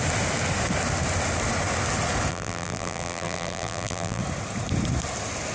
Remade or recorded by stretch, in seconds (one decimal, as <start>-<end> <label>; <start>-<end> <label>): 0.0-2.3 recorded; 2.3-4.2 remade; 4.2-5.5 recorded